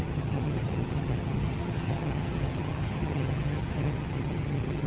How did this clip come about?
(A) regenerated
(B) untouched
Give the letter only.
A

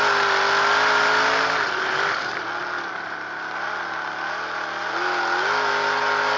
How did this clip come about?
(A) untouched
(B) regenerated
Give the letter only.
A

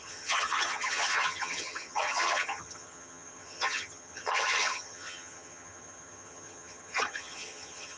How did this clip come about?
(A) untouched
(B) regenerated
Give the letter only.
B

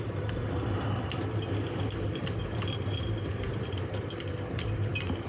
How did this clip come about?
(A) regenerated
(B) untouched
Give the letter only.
B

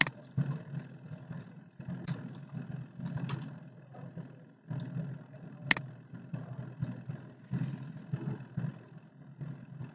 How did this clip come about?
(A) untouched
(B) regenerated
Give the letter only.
A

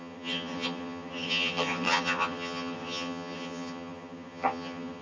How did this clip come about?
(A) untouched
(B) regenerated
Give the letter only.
B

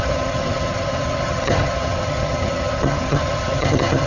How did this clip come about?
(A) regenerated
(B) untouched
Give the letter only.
A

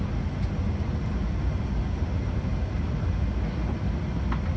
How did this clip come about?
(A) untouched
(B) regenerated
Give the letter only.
A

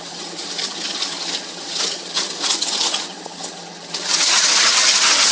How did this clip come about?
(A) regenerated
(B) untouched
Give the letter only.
A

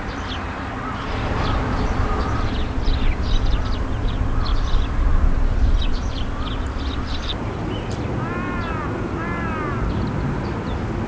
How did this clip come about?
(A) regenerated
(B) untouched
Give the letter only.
B